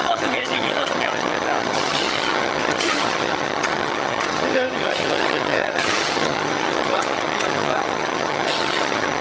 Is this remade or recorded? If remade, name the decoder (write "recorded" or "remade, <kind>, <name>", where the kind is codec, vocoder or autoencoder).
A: remade, vocoder, HiFi-GAN